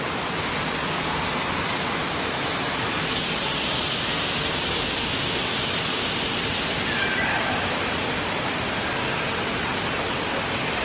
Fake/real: real